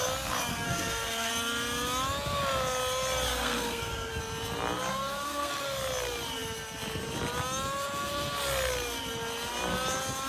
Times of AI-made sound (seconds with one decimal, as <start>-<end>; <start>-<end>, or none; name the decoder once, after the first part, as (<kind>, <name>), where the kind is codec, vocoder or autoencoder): 0.5-1.3 (codec, SNAC); 3.3-4.2; 4.9-5.5